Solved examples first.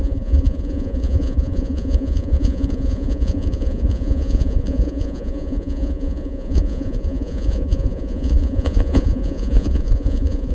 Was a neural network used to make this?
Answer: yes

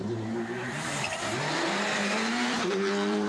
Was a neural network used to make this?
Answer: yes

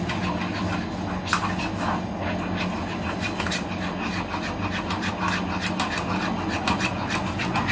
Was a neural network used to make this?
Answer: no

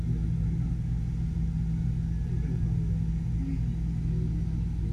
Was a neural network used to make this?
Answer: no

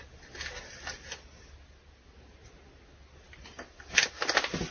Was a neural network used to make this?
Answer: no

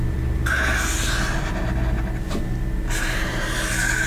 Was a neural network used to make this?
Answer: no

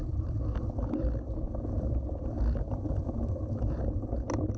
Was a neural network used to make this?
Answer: yes